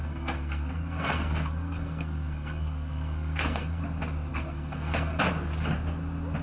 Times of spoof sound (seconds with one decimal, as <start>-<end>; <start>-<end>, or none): 0.0-3.8; 4.3-5.2